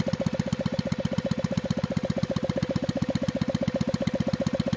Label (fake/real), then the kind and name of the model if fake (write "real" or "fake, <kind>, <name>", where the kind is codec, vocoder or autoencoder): real